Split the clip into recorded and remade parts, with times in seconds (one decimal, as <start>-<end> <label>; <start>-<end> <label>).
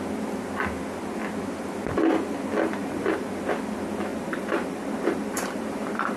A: 0.0-2.8 recorded; 2.8-3.3 remade; 3.3-4.1 recorded; 4.1-6.2 remade